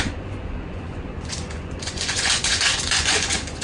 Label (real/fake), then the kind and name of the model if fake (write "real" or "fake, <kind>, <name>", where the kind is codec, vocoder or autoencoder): fake, vocoder, Vocos